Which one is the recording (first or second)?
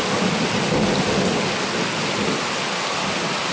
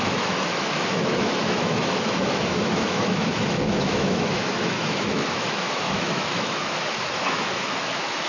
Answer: first